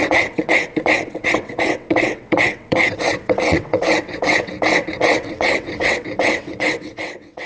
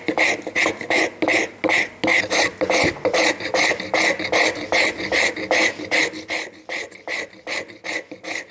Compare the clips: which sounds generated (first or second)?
first